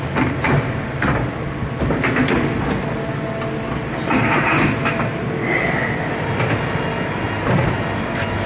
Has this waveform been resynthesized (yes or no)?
no